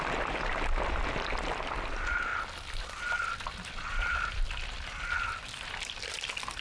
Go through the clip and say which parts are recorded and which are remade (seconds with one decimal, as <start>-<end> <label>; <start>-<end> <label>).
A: 0.0-6.6 recorded